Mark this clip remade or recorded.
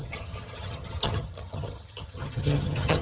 remade